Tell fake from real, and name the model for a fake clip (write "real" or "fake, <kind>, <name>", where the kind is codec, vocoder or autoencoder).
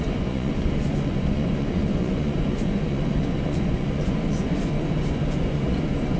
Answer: fake, vocoder, Vocos